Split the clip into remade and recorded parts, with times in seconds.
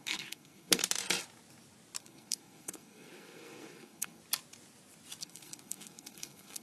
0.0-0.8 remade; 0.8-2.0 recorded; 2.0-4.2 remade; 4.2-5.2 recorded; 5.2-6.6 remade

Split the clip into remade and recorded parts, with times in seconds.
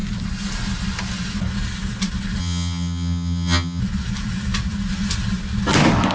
0.0-2.4 recorded; 2.4-3.8 remade; 3.8-6.1 recorded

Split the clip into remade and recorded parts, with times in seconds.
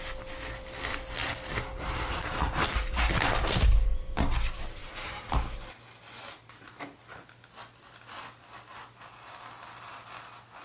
0.0-1.2 recorded; 1.2-3.1 remade; 3.1-4.8 recorded; 4.8-5.3 remade; 5.3-10.6 recorded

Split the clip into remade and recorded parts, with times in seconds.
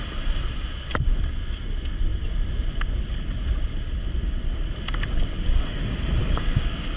0.0-6.2 recorded; 6.2-7.0 remade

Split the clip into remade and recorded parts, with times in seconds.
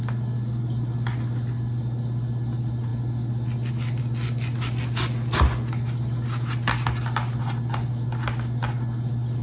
0.0-9.4 recorded